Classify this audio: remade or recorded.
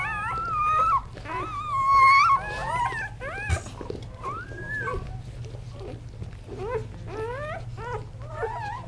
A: recorded